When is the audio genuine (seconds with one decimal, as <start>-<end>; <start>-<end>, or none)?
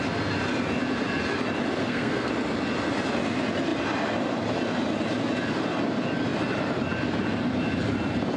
0.0-1.8; 2.3-8.4